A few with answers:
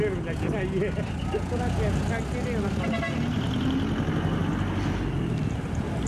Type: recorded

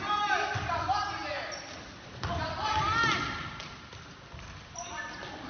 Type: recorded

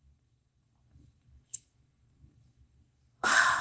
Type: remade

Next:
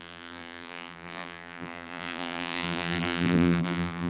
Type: remade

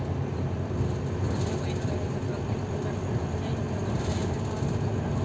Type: recorded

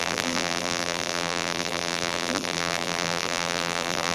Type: remade